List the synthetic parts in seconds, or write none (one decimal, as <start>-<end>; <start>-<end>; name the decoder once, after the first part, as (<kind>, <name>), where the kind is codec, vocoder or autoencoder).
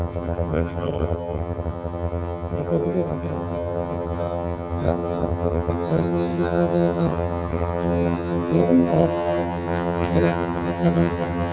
0.0-11.5 (vocoder, HiFi-GAN)